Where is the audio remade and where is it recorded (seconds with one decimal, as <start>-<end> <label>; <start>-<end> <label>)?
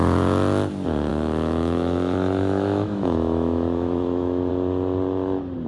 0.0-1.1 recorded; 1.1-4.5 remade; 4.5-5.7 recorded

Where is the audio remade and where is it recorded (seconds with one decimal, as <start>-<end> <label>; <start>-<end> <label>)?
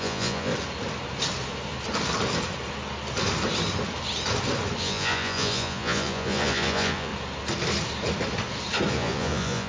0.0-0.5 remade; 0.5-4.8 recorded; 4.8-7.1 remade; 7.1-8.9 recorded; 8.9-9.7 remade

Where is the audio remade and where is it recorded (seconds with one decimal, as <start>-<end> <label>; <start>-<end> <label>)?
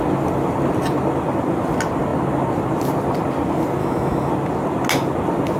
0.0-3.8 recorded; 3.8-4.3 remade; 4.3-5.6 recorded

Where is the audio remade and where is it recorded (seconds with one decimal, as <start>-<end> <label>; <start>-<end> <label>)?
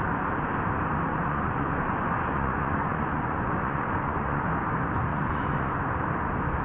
0.0-1.1 recorded; 1.1-4.5 remade; 4.5-5.1 recorded; 5.1-5.7 remade; 5.7-6.6 recorded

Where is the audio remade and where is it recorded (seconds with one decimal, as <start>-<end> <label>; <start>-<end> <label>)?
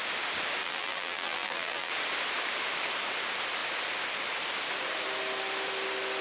0.0-0.6 recorded; 0.6-1.9 remade; 1.9-6.2 recorded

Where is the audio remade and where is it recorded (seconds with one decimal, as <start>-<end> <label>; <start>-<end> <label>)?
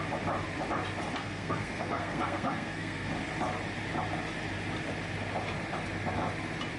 0.0-1.2 recorded; 1.2-3.1 remade; 3.1-6.8 recorded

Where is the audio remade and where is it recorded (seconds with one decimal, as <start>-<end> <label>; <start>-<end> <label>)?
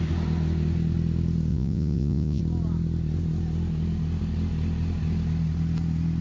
0.0-1.5 recorded; 1.5-2.4 remade; 2.4-6.2 recorded